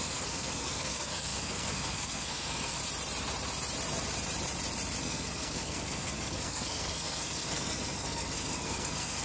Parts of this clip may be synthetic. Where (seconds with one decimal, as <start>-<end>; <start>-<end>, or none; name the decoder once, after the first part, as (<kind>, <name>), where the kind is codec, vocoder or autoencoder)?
0.0-2.8 (codec, SNAC); 5.0-9.2